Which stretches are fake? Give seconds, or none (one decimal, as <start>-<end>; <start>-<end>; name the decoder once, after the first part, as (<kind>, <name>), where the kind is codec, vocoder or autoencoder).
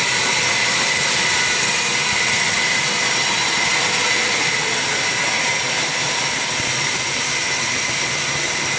none